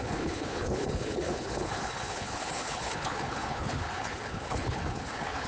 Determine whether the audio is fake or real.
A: fake